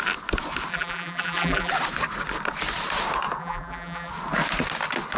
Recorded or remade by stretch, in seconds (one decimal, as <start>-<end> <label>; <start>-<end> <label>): 0.0-0.7 recorded; 0.7-1.7 remade; 1.7-3.4 recorded; 3.4-4.1 remade; 4.1-5.2 recorded